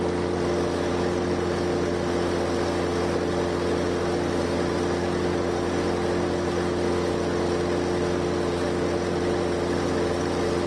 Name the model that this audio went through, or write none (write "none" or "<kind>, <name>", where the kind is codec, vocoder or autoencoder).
none